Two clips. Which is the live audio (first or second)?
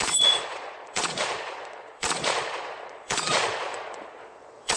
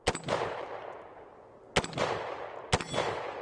second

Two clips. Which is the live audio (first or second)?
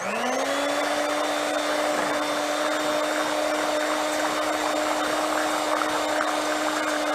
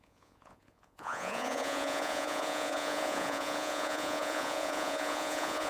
first